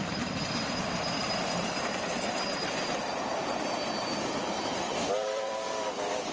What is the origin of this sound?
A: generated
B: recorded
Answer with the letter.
A